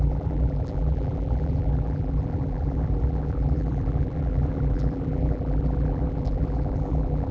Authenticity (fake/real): fake